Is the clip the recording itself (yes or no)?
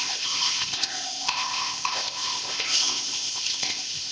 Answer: no